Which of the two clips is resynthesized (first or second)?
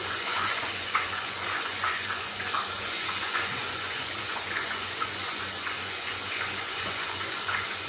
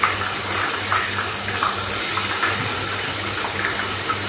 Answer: first